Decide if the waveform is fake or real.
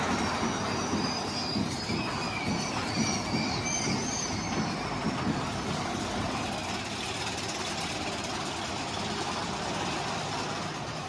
real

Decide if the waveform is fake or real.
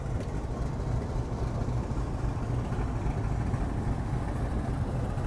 real